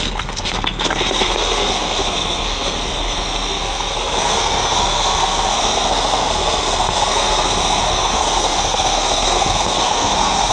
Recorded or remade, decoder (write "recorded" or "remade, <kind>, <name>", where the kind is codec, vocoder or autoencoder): remade, codec, SNAC